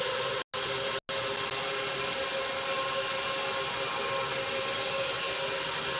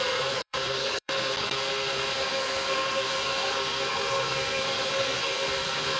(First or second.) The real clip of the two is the first